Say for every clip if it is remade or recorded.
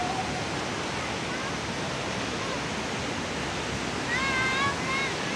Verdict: recorded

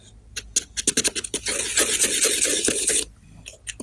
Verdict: recorded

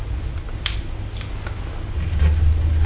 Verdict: recorded